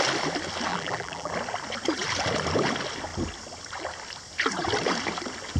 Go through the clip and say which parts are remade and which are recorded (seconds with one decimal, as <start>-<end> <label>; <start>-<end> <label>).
0.0-0.7 recorded; 0.7-1.3 remade; 1.3-5.6 recorded